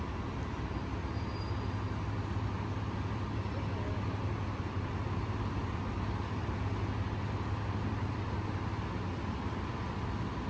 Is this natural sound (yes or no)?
yes